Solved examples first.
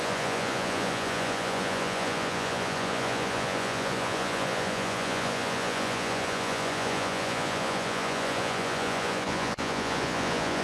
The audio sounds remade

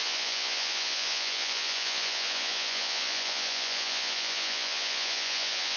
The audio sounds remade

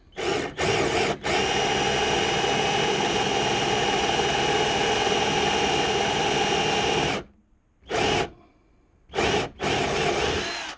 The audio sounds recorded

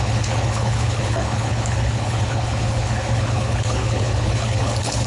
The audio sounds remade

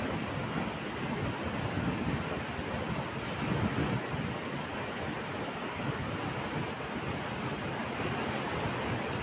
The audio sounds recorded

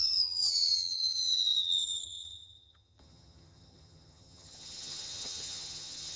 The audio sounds remade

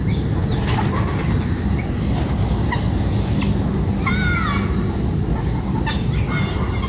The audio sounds recorded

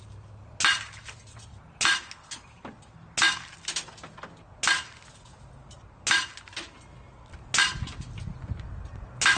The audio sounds recorded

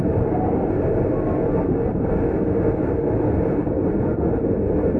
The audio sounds recorded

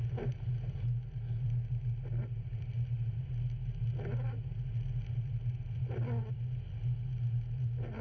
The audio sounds recorded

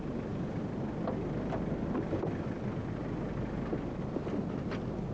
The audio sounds recorded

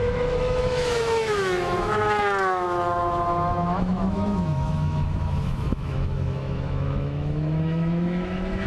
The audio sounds remade